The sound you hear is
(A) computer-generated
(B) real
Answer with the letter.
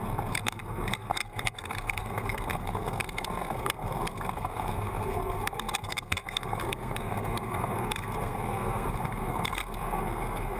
A